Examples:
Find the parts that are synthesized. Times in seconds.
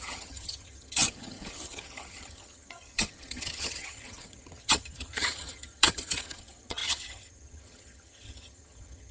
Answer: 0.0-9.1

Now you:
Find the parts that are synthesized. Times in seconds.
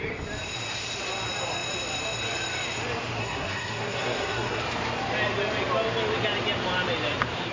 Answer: 3.2-4.6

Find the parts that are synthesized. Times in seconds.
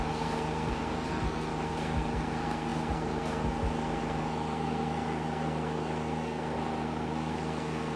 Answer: 0.0-8.0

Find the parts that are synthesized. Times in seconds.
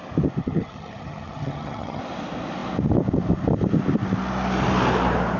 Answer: 0.4-2.0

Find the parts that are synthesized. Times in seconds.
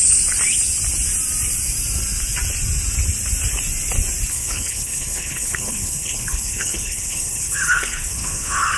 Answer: 4.3-8.8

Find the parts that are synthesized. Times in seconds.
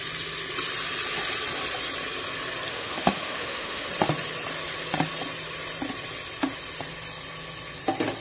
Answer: 2.7-3.9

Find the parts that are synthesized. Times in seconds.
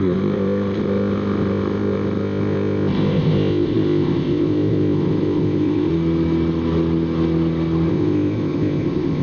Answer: 0.0-5.9; 7.9-9.2